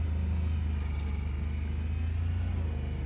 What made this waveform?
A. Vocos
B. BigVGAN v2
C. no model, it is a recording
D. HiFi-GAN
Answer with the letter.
C